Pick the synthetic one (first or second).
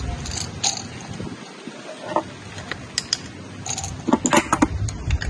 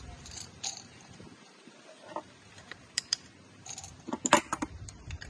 second